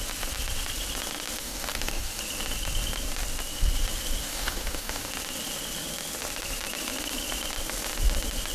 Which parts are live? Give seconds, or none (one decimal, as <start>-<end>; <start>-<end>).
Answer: 0.0-1.4; 2.2-4.2; 5.1-8.5